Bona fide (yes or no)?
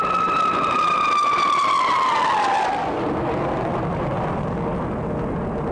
yes